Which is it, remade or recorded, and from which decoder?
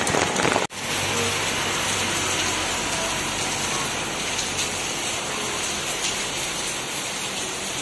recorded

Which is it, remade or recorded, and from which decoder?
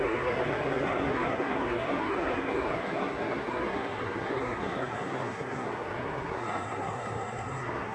remade, codec, SNAC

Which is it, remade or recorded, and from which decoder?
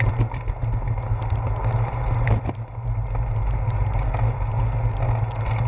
recorded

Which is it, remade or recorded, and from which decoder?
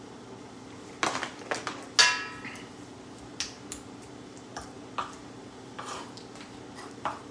recorded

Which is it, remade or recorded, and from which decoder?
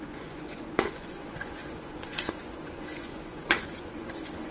remade, vocoder, Vocos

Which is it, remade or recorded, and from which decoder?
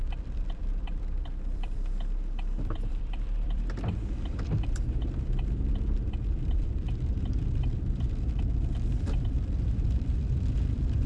remade, vocoder, BigVGAN v2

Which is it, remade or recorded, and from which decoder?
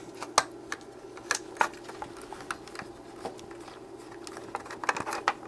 recorded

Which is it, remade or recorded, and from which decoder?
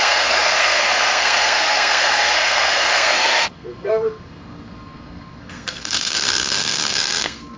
remade, codec, SNAC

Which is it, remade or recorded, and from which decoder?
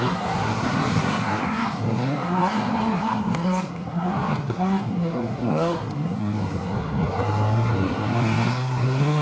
remade, codec, SNAC